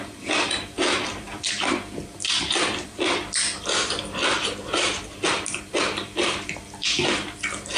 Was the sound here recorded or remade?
remade